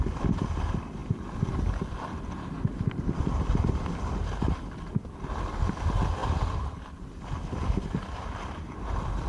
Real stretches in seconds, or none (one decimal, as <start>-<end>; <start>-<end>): 0.0-9.3